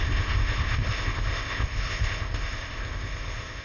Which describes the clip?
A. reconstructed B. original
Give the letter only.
A